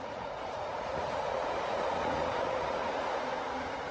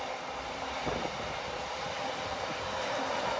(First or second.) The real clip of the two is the second